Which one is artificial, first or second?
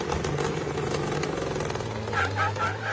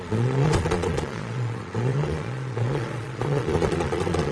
second